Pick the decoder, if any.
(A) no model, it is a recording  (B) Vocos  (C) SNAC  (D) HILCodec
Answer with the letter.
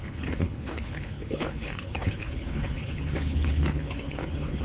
D